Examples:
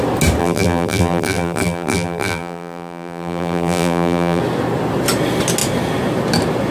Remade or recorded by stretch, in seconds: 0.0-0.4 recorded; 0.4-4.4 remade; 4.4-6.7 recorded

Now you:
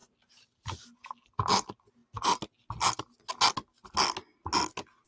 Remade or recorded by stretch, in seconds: 0.0-1.0 remade; 1.0-5.1 recorded

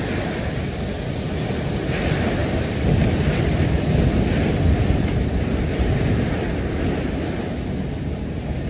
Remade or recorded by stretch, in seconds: 0.0-2.4 recorded; 2.4-5.6 remade; 5.6-8.7 recorded

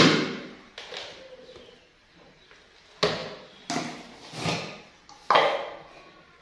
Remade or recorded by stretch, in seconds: 0.0-6.4 recorded

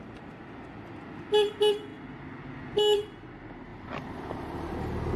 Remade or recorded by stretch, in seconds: 0.0-3.7 recorded; 3.7-5.2 remade

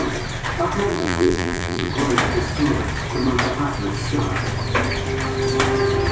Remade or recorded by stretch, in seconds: 0.0-0.9 recorded; 0.9-1.9 remade; 1.9-6.1 recorded

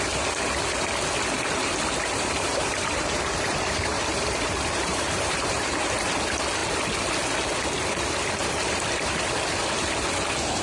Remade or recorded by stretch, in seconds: 0.0-1.6 recorded; 1.6-5.7 remade; 5.7-8.4 recorded; 8.4-9.2 remade; 9.2-10.6 recorded